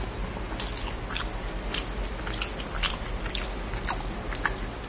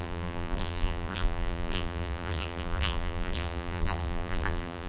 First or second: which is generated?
second